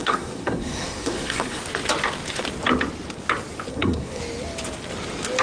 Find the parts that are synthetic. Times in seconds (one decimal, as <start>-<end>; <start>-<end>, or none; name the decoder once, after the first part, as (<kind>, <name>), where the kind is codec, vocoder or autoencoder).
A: 0.0-1.6 (codec, SNAC); 3.7-4.2